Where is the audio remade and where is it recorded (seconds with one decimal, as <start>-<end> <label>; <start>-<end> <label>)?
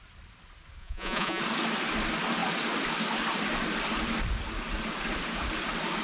0.0-0.8 recorded; 0.8-1.4 remade; 1.4-6.0 recorded